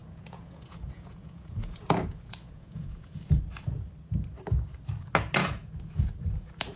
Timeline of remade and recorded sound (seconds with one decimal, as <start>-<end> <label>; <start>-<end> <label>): 0.0-3.9 remade; 3.9-5.4 recorded; 5.4-6.8 remade